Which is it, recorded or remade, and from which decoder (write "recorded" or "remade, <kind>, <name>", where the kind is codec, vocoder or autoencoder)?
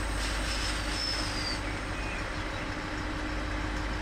recorded